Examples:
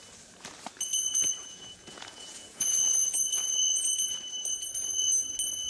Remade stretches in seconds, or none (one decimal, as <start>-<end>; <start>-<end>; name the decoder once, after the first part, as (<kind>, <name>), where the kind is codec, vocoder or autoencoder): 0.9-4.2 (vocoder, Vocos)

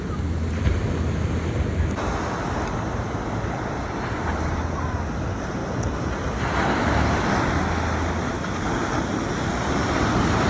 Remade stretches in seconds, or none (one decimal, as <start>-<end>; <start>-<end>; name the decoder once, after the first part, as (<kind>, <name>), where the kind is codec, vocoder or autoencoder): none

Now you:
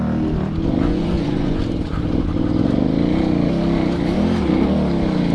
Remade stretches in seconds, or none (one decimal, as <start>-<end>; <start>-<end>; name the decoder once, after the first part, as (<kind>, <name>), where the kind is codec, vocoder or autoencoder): 0.9-1.6 (vocoder, Vocos)